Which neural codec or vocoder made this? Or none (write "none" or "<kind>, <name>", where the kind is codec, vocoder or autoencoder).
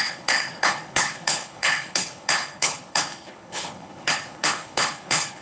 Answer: codec, HILCodec